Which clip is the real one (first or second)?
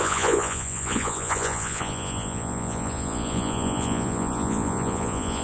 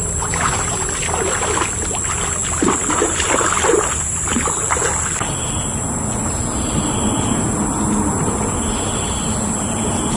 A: second